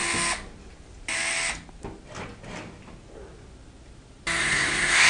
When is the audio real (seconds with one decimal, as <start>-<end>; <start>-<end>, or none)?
0.0-4.4